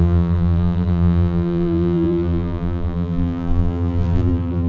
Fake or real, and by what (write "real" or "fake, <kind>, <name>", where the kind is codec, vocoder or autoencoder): fake, vocoder, BigVGAN v2